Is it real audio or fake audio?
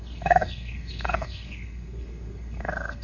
fake